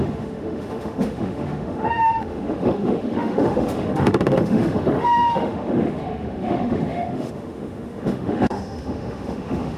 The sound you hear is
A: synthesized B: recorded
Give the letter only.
A